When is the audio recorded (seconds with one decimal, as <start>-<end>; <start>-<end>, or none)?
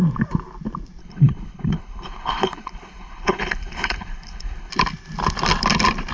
0.0-1.0; 4.7-6.1